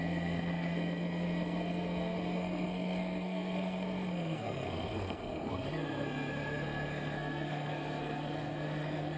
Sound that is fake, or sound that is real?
fake